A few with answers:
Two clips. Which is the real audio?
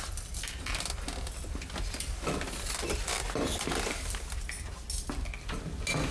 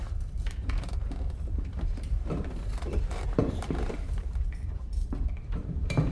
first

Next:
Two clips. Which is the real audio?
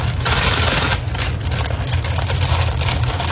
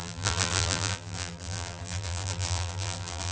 first